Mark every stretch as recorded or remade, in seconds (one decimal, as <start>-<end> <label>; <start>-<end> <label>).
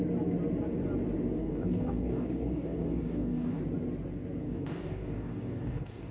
0.0-1.4 recorded; 1.4-3.6 remade; 3.6-4.4 recorded; 4.4-6.1 remade